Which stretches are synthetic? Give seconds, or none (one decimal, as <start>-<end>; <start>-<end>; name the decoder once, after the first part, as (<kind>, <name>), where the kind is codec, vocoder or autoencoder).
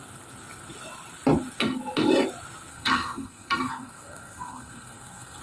2.7-5.4 (codec, SNAC)